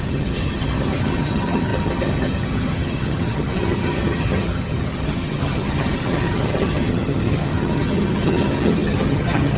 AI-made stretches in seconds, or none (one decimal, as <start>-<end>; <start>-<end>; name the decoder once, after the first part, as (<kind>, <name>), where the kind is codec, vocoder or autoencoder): 0.0-9.6 (vocoder, HiFi-GAN)